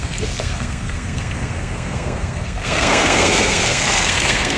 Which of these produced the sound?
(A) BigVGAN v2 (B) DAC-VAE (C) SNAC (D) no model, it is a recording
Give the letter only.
C